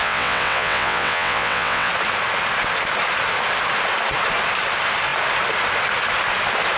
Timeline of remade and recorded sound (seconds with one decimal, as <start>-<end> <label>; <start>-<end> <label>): 0.0-1.9 remade; 1.9-6.8 recorded